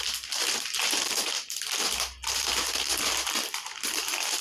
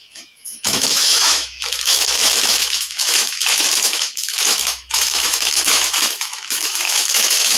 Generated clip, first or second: second